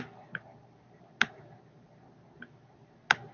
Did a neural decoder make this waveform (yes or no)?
no